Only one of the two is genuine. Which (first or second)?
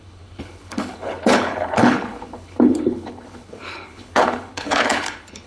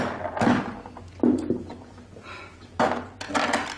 second